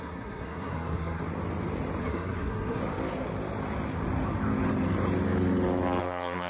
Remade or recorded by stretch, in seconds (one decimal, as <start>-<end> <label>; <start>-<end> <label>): 0.0-1.2 remade; 1.2-2.0 recorded; 2.0-2.8 remade; 2.8-6.0 recorded; 6.0-6.5 remade

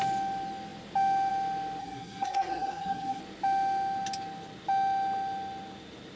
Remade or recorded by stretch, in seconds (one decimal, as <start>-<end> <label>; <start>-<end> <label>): 0.0-1.8 recorded; 1.8-3.2 remade; 3.2-6.2 recorded